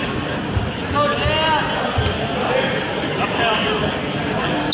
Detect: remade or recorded recorded